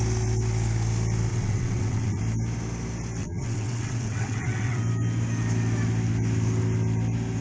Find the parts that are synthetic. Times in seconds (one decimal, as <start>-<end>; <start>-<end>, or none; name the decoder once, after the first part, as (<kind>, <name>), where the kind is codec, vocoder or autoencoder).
1.3-2.2 (vocoder, WaveNeXt); 3.2-4.8